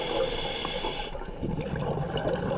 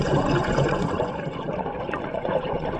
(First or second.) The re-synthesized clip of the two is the second